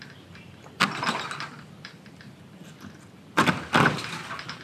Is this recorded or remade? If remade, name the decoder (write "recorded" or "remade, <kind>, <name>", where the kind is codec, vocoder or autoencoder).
recorded